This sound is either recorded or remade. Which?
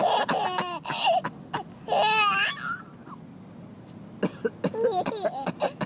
recorded